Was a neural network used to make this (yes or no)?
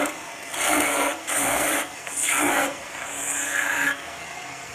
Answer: yes